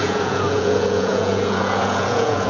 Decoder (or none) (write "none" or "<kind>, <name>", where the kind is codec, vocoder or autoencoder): vocoder, Vocos